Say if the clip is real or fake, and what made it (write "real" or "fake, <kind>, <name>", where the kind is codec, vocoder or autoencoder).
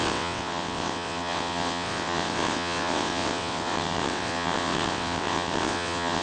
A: fake, vocoder, WaveNeXt